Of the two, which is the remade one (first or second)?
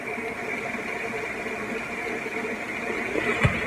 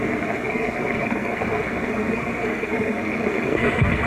second